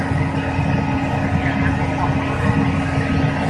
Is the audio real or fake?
real